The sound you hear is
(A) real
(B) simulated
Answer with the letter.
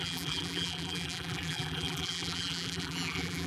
B